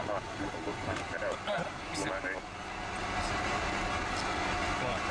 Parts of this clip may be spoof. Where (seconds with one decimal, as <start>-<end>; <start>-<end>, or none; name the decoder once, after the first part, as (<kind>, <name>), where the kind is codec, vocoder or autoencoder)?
none